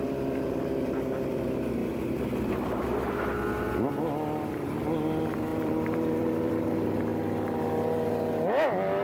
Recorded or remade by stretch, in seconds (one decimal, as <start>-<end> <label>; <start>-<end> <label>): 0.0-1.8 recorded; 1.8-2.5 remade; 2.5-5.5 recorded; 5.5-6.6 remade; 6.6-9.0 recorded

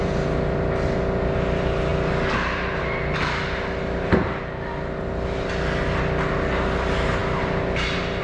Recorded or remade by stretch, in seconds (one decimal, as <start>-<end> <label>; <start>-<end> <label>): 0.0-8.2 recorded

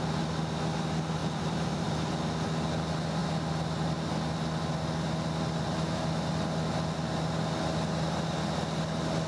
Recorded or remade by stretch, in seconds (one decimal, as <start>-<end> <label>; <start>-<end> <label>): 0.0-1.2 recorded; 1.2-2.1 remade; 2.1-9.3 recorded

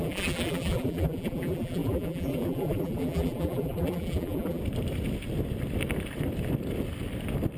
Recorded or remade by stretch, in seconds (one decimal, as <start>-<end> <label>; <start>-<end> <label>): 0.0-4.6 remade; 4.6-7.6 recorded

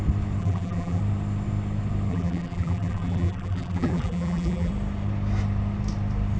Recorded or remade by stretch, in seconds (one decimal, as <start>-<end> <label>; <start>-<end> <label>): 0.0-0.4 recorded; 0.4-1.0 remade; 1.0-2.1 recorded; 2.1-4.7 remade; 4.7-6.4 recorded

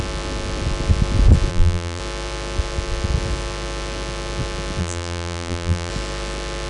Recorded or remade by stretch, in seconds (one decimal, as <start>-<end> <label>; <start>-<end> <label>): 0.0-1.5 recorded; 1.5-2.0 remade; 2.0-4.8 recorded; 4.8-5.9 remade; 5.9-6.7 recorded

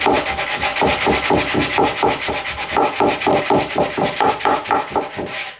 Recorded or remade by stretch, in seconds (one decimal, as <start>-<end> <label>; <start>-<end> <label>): 0.0-5.6 recorded

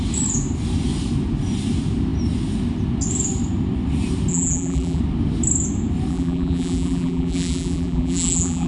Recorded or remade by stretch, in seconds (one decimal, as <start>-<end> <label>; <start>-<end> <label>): 0.0-4.3 recorded; 4.3-5.0 remade; 5.0-6.1 recorded; 6.1-8.7 remade